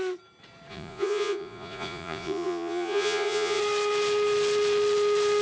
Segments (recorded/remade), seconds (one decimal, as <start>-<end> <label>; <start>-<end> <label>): 0.0-0.7 recorded; 0.7-3.6 remade; 3.6-5.4 recorded